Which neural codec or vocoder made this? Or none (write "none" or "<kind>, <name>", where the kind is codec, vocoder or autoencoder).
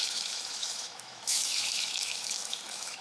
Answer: autoencoder, DAC-VAE